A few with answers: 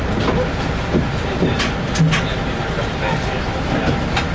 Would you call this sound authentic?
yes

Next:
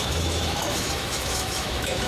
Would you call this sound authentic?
no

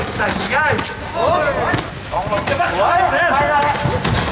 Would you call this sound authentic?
yes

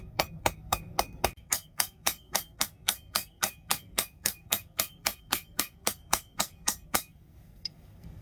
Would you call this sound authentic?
no